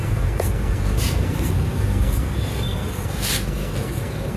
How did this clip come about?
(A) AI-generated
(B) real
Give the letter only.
A